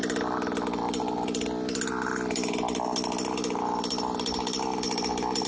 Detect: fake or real real